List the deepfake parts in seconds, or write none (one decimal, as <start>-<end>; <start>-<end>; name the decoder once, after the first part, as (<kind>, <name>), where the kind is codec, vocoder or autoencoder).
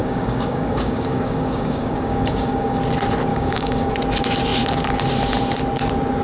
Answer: 0.0-2.8 (codec, DAC); 3.3-3.9